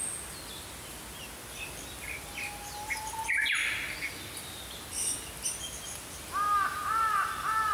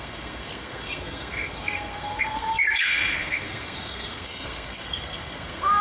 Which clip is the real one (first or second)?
first